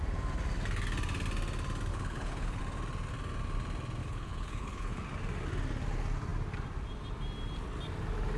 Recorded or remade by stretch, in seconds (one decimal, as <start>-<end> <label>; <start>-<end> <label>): 0.0-1.9 recorded; 1.9-2.6 remade; 2.6-4.0 recorded; 4.0-5.0 remade; 5.0-8.4 recorded